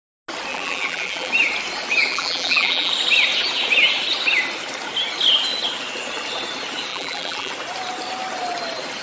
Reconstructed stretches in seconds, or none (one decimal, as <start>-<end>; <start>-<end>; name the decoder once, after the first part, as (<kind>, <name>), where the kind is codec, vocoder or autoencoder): 0.5-1.3 (vocoder, BigVGAN v2); 2.1-2.9; 6.9-7.5